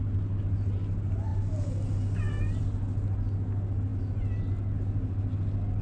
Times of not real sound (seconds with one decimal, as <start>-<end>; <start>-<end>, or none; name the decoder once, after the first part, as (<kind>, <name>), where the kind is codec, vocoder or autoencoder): none